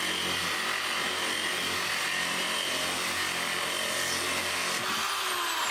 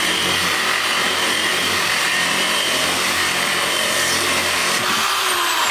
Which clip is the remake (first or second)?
second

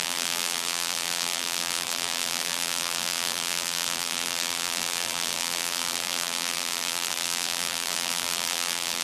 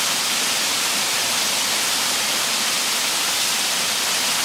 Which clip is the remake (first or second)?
first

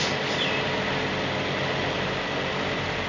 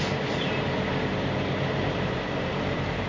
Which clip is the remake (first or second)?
second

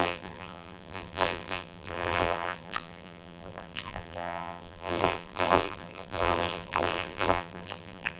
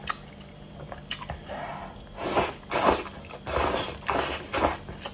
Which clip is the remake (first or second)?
first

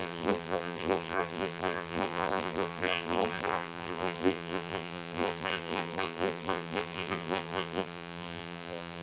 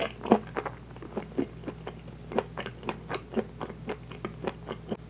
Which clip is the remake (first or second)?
first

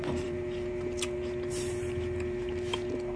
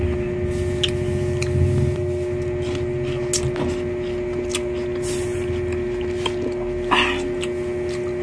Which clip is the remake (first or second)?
first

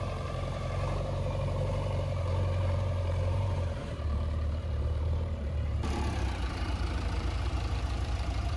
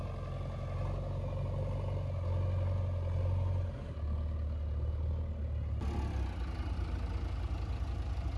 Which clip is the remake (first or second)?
first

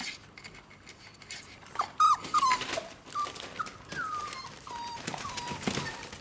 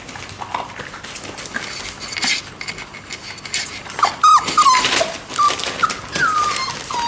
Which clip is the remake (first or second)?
first